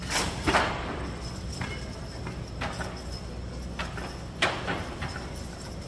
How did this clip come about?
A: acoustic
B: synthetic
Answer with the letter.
A